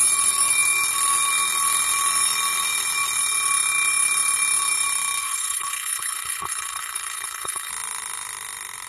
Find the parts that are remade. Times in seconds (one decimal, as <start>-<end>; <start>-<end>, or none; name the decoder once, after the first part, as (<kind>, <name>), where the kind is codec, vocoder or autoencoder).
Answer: 5.2-7.7 (codec, HILCodec)